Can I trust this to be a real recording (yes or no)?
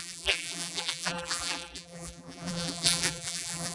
no